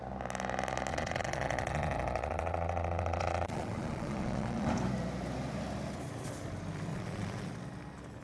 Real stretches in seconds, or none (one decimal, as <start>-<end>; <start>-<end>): 0.0-0.9; 4.7-6.9; 7.5-8.2